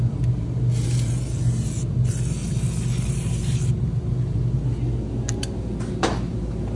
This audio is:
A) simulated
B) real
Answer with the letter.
B